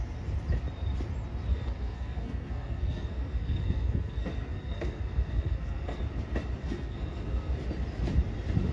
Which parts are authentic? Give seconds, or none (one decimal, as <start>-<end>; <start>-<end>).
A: 0.0-1.5; 6.0-6.6; 7.6-8.7